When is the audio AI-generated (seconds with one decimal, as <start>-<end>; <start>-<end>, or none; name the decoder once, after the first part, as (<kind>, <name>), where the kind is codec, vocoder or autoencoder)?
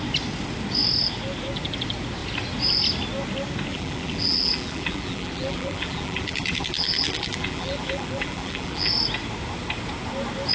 3.7-8.9 (vocoder, BigVGAN v2)